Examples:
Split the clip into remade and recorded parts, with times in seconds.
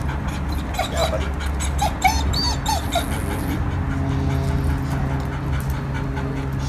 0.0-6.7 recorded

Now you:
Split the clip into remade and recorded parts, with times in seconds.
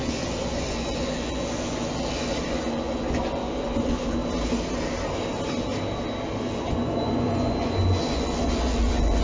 0.0-4.2 remade; 4.2-6.4 recorded; 6.4-9.2 remade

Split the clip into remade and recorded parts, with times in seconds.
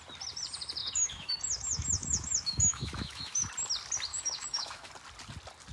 0.0-0.8 recorded; 0.8-3.5 remade; 3.5-4.1 recorded; 4.1-4.9 remade; 4.9-5.7 recorded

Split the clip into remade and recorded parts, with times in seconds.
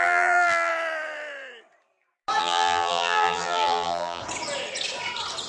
0.0-0.7 remade; 0.7-2.4 recorded; 2.4-4.2 remade; 4.2-5.5 recorded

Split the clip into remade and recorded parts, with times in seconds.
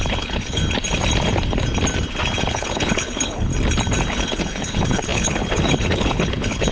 0.0-0.6 remade; 0.6-2.4 recorded; 2.4-3.5 remade; 3.5-4.1 recorded; 4.1-6.7 remade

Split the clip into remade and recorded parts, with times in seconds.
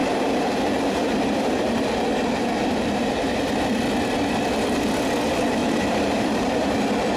0.0-3.4 remade; 3.4-5.6 recorded; 5.6-6.7 remade; 6.7-7.2 recorded